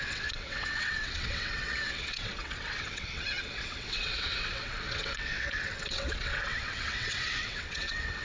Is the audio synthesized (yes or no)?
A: yes